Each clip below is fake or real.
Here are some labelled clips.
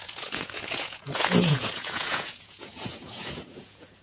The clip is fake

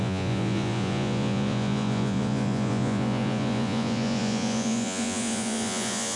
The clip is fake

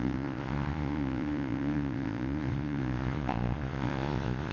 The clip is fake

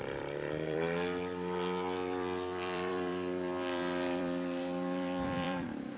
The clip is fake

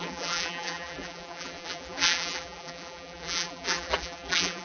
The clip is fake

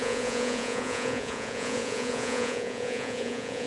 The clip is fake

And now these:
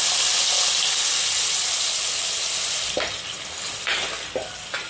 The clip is real